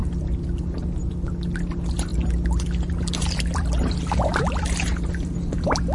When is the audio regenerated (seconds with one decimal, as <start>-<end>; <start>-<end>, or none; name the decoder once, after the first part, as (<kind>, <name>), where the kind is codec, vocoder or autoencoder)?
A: none